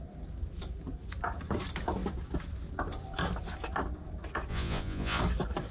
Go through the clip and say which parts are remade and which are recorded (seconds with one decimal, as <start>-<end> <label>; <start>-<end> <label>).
0.0-4.5 recorded; 4.5-5.2 remade; 5.2-5.7 recorded

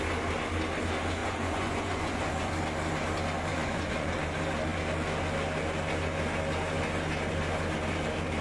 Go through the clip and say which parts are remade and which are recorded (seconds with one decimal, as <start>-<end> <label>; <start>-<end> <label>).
0.0-1.2 recorded; 1.2-2.5 remade; 2.5-3.5 recorded; 3.5-4.2 remade; 4.2-8.4 recorded

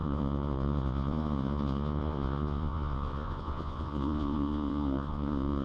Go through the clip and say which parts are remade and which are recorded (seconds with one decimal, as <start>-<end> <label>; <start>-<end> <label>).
0.0-5.6 remade

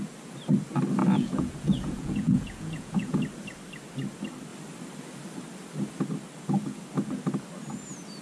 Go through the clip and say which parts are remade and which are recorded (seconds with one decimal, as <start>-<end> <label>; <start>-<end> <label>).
0.0-1.0 recorded; 1.0-3.2 remade; 3.2-8.2 recorded

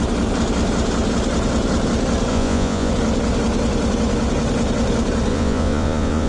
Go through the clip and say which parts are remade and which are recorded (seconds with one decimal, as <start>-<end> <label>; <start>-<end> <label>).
0.0-2.3 recorded; 2.3-2.9 remade; 2.9-5.3 recorded; 5.3-6.3 remade

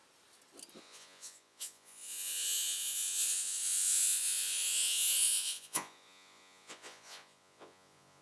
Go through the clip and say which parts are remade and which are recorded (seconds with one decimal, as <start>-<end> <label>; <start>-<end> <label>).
0.0-0.8 recorded; 0.8-8.2 remade

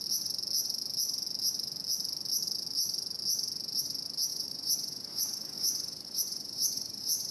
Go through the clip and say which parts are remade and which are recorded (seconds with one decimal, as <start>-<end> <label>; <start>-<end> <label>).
0.0-4.3 recorded; 4.3-7.3 remade